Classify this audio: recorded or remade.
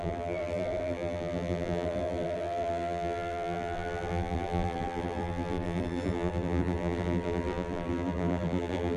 remade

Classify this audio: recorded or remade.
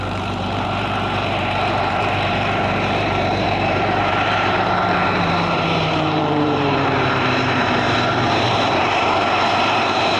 remade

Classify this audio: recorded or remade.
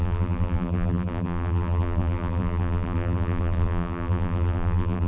remade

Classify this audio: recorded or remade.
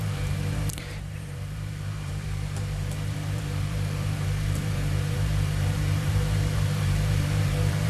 remade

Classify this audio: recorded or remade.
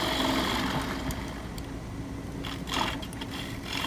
recorded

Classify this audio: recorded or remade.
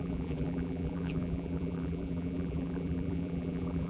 remade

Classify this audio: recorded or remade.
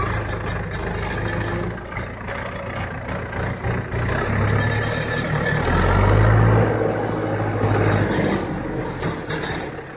recorded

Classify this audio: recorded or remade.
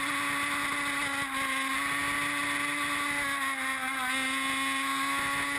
recorded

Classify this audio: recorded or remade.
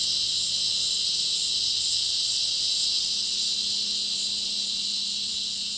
recorded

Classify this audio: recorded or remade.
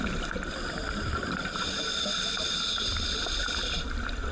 recorded